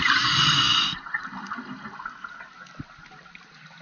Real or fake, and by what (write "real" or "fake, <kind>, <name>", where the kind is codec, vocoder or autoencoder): real